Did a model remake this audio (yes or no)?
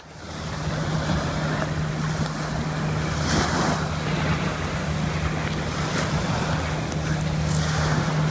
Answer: no